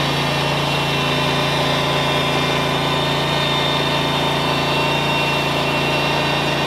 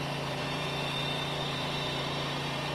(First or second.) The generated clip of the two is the second